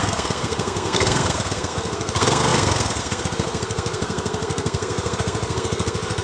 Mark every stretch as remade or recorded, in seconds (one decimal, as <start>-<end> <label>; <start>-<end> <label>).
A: 0.0-6.2 remade